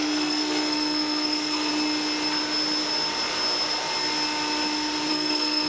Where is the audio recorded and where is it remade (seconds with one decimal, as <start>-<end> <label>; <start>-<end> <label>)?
0.0-1.7 remade; 1.7-5.1 recorded; 5.1-5.7 remade